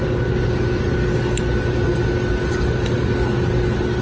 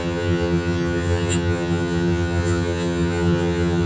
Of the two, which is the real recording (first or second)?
first